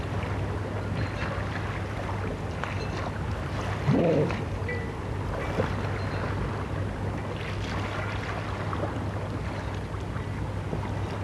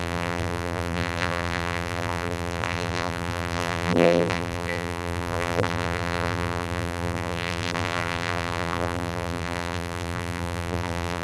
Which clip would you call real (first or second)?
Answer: first